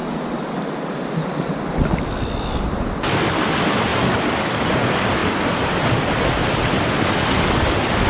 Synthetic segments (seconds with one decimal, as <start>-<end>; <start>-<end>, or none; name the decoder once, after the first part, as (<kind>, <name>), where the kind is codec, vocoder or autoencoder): 3.9-4.7 (vocoder, BigVGAN v2); 5.2-5.9